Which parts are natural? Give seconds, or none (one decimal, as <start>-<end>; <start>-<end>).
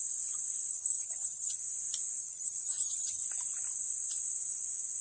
0.0-0.7; 1.6-2.2; 3.2-5.0